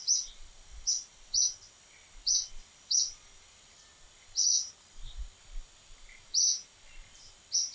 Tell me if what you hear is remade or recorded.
recorded